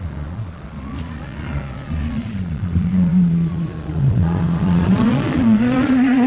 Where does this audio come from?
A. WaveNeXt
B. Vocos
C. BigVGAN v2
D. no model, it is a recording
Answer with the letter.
B